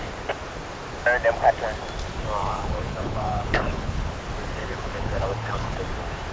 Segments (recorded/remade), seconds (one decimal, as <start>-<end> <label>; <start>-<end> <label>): 0.0-2.4 recorded; 2.4-4.1 remade; 4.1-4.6 recorded; 4.6-5.8 remade; 5.8-6.3 recorded